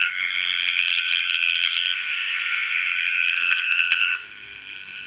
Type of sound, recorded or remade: remade